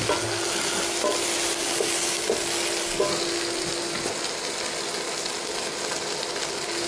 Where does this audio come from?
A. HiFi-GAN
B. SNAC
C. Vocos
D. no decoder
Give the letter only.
D